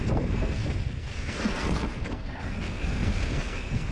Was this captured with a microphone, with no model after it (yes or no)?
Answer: no